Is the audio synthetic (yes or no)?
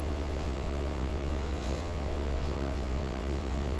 yes